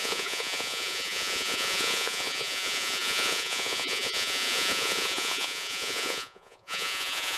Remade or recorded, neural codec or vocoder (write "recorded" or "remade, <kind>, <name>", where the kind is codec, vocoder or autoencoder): remade, vocoder, Vocos